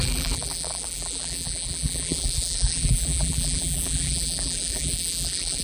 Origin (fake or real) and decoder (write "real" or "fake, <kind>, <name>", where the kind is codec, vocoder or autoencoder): fake, vocoder, BigVGAN v2